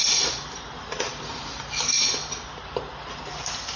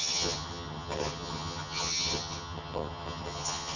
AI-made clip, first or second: second